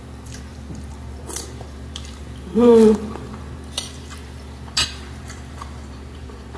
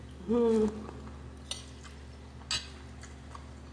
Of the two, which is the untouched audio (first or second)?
second